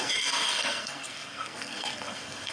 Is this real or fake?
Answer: fake